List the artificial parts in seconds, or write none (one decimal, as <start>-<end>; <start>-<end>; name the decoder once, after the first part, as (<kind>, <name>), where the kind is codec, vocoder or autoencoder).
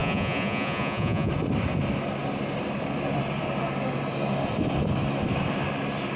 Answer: 0.0-1.3 (vocoder, Vocos)